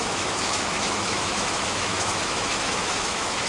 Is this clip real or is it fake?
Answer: fake